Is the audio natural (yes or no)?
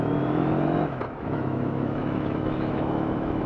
no